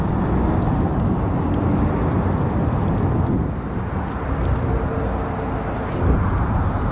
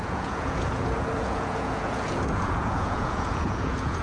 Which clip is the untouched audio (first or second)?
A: first